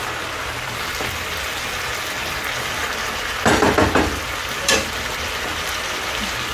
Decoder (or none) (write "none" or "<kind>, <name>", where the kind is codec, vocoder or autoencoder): none